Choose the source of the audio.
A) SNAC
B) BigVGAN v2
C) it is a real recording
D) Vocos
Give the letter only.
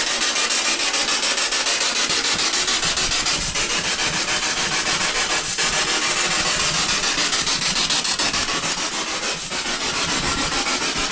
C